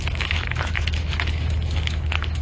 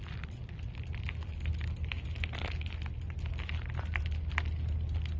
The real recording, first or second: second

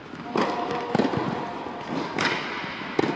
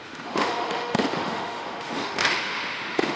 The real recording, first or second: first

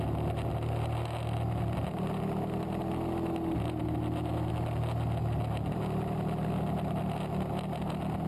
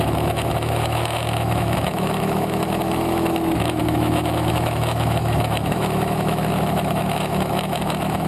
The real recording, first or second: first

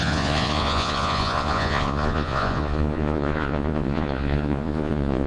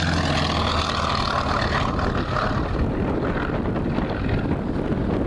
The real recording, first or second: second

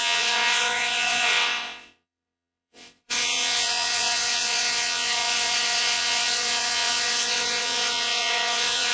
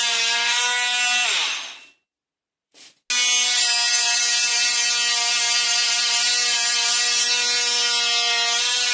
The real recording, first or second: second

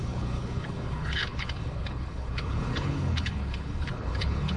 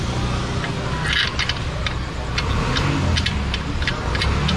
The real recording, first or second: second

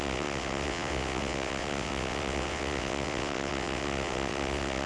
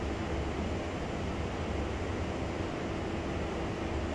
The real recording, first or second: second